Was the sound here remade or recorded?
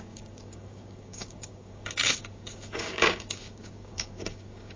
remade